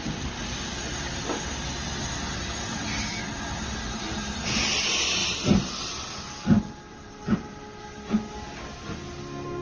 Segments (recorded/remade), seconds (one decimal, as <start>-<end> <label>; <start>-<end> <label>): 0.0-9.6 recorded